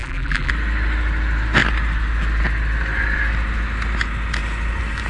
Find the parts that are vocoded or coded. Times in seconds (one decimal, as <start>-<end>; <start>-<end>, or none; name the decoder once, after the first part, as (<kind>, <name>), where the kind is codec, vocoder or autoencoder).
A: 0.0-0.5 (vocoder, BigVGAN v2)